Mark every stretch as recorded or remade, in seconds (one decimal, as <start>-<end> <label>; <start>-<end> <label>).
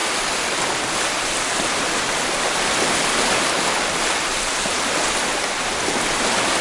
0.0-6.6 recorded